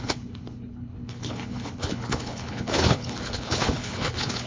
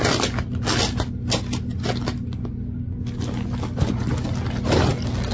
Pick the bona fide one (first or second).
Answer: second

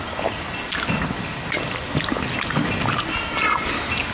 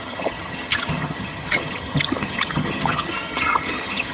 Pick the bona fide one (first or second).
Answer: first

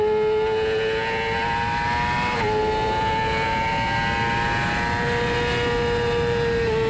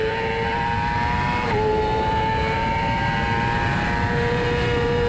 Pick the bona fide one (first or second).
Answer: first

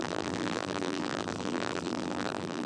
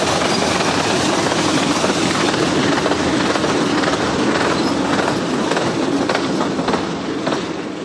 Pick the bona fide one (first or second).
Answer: second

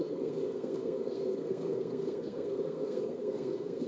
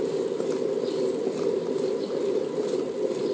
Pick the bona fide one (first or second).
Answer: second